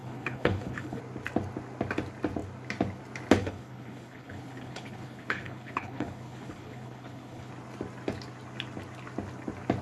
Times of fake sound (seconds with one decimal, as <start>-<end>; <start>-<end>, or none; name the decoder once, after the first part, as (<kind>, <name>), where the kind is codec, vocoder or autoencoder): 0.0-1.0 (codec, HILCodec); 3.4-7.5